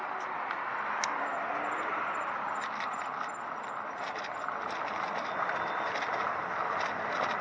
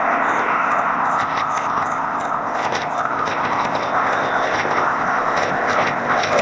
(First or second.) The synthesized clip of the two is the second